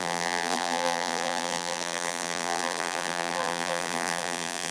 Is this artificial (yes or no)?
yes